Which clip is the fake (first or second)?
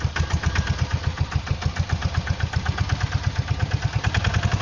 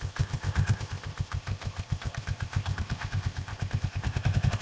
second